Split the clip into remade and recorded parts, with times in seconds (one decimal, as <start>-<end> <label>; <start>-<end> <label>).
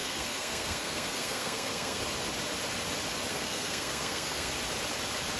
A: 0.0-2.0 remade; 2.0-3.3 recorded; 3.3-4.5 remade; 4.5-5.4 recorded